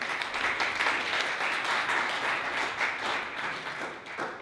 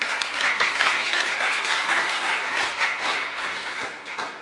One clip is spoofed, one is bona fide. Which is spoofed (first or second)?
second